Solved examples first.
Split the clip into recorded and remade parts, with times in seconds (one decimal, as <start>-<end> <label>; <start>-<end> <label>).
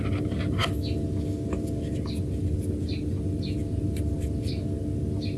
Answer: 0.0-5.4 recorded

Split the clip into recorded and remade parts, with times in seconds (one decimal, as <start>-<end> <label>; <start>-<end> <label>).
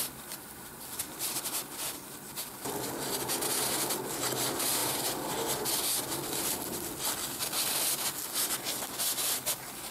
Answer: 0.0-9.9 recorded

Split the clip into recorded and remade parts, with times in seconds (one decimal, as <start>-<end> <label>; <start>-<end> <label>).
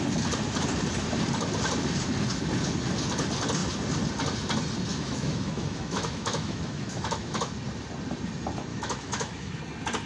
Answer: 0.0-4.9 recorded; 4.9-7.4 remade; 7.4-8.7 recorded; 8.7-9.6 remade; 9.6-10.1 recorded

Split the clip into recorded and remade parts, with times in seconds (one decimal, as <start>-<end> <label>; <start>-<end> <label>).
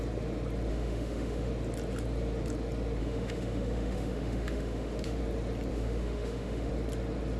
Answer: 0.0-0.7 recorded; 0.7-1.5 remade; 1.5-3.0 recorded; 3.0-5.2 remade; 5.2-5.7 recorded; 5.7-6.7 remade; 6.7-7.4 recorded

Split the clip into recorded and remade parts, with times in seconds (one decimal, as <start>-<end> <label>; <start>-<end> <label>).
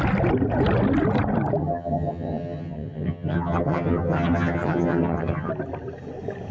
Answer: 0.0-1.6 recorded; 1.6-5.5 remade; 5.5-6.5 recorded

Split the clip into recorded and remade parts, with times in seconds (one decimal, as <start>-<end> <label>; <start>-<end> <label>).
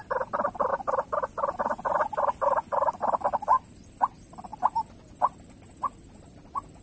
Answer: 0.0-6.8 recorded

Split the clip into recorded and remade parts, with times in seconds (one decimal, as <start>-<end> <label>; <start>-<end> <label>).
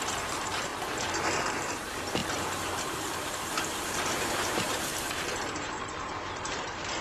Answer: 0.0-0.7 remade; 0.7-1.4 recorded; 1.4-7.0 remade